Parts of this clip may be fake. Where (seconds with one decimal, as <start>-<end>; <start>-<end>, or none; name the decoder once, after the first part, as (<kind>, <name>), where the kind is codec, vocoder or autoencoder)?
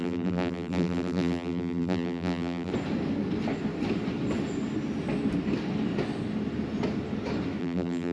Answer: 0.0-2.7 (vocoder, BigVGAN v2); 7.6-8.1